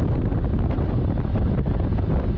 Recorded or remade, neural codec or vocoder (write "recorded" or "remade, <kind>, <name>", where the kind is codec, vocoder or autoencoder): recorded